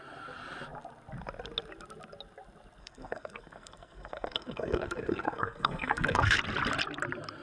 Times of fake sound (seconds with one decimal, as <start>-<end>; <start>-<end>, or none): 2.8-6.4